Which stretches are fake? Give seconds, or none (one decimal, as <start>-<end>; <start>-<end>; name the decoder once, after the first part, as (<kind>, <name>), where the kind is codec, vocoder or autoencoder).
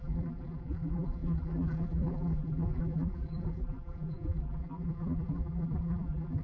0.0-6.4 (vocoder, BigVGAN v2)